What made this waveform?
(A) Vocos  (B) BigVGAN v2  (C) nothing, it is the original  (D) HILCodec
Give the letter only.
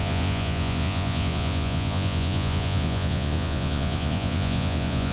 A